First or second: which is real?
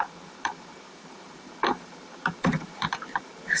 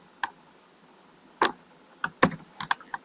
second